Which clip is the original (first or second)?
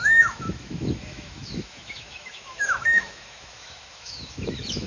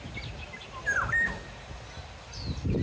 second